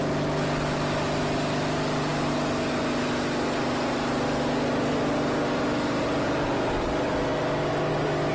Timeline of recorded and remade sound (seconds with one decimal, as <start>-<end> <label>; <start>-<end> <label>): 0.0-8.3 recorded